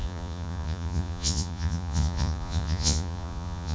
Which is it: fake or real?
fake